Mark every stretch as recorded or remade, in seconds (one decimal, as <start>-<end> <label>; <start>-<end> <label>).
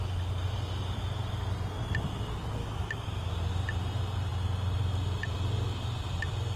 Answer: 0.0-2.6 recorded; 2.6-3.3 remade; 3.3-6.6 recorded